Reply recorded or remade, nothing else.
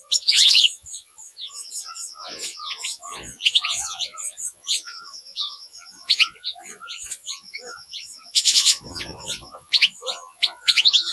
remade